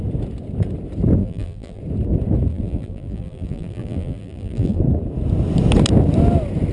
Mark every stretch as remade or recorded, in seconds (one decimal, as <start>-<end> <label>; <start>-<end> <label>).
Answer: 0.0-1.2 recorded; 1.2-1.8 remade; 1.8-2.5 recorded; 2.5-4.8 remade; 4.8-6.7 recorded